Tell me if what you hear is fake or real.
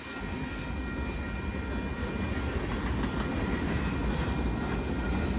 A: real